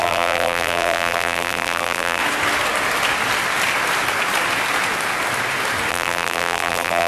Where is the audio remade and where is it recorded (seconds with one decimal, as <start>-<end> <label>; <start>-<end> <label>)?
0.0-2.2 remade; 2.2-5.9 recorded; 5.9-7.1 remade